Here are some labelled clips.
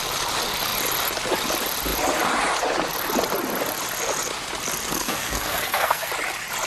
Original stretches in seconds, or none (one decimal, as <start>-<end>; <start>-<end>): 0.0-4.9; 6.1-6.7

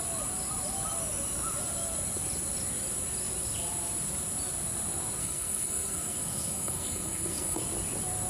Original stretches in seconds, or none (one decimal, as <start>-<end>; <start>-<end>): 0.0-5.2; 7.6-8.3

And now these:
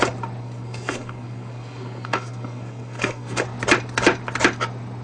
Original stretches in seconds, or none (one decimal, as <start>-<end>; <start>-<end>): 0.0-0.4; 3.4-5.0